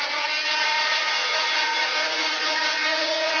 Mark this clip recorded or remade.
remade